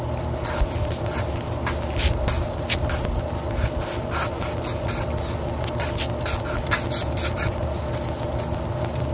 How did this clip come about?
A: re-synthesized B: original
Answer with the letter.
B